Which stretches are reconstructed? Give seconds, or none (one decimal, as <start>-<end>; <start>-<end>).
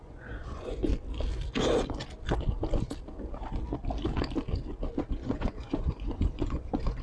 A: 0.0-0.9; 5.1-7.0